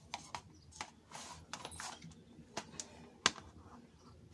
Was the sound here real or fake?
real